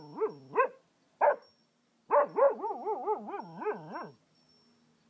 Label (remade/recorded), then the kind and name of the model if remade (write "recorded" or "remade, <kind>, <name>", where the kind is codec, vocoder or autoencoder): recorded